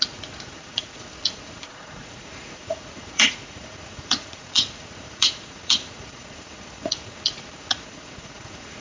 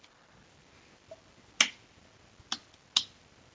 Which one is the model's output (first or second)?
first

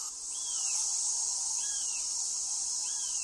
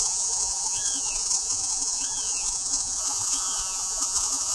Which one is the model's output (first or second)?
second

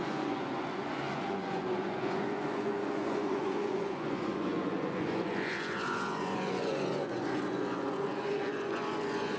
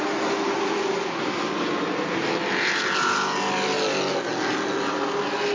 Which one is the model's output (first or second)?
first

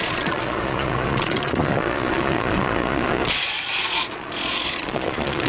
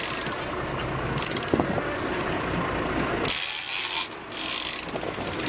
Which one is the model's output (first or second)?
first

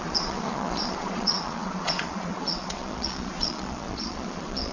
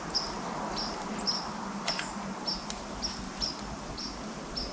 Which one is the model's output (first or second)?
first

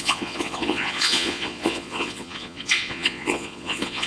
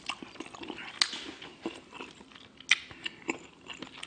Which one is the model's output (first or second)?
first